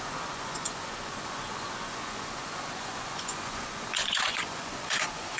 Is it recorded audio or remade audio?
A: remade